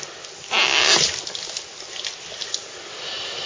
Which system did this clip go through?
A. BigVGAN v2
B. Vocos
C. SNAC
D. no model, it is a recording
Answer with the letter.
D